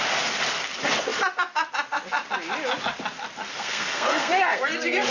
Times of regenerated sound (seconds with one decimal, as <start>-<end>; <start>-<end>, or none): 3.5-4.6

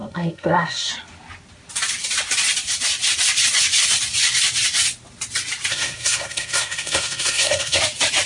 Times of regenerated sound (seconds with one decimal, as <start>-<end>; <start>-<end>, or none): 0.0-0.9; 5.7-7.8

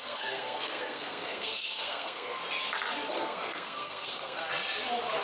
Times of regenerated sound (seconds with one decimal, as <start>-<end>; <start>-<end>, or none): 0.0-2.4; 3.1-4.4

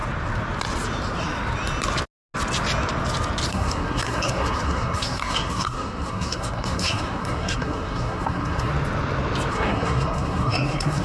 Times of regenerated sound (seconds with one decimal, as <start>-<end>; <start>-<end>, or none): 3.5-8.7; 9.5-11.0

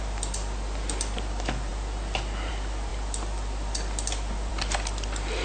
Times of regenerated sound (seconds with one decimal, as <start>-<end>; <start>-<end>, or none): none

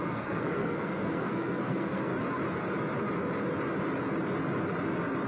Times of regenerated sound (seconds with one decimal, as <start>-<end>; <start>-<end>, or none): 0.0-2.1